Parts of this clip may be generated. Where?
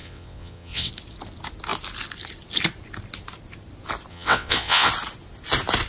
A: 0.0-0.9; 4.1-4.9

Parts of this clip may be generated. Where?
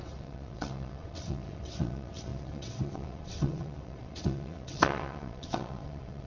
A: 0.0-6.3